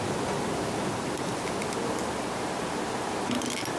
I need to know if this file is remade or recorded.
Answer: recorded